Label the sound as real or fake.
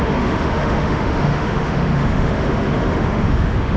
fake